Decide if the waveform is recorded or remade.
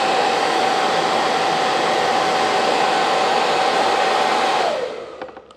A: recorded